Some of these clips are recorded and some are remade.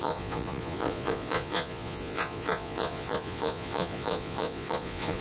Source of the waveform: remade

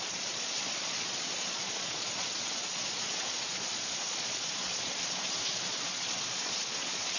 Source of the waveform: remade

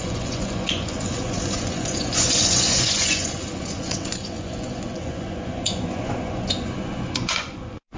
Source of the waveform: remade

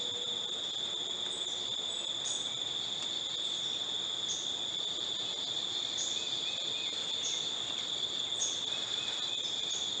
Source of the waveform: recorded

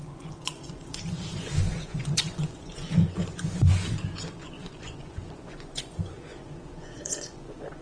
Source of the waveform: remade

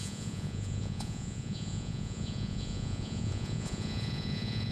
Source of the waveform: remade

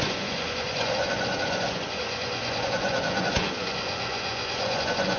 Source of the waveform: remade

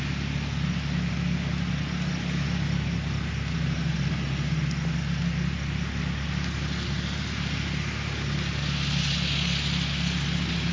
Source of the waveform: recorded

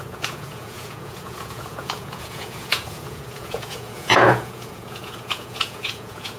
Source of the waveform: remade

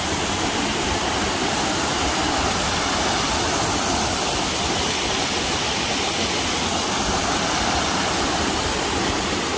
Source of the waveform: recorded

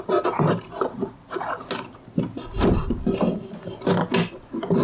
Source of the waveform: recorded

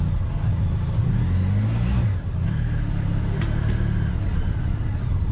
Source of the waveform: recorded